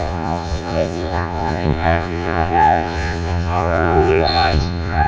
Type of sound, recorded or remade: remade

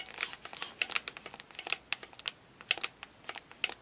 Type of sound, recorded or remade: recorded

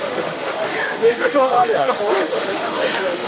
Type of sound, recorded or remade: remade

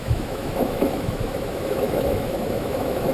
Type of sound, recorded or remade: remade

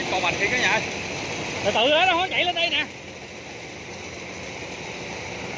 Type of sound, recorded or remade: recorded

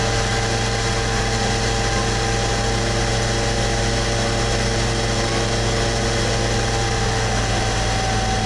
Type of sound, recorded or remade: recorded